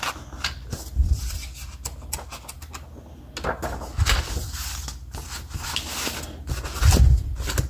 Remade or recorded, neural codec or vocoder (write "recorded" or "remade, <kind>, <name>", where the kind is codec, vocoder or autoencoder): recorded